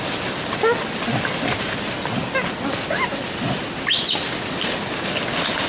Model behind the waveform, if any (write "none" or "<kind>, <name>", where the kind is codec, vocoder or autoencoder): none